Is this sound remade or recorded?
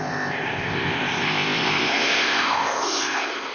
remade